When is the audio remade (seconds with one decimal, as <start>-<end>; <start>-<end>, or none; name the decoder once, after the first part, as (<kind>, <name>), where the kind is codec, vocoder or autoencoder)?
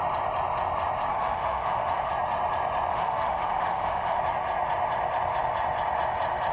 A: 1.1-2.1 (autoencoder, DAC-VAE); 2.9-4.2